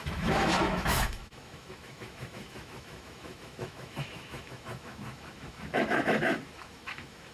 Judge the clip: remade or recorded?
remade